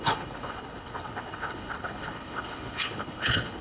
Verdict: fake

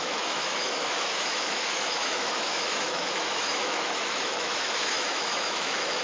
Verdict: fake